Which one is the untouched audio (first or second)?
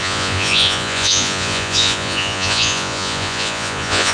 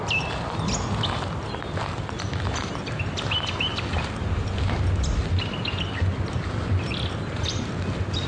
second